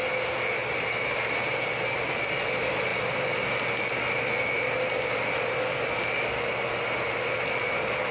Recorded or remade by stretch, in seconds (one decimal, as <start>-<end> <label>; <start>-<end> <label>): 0.0-8.1 recorded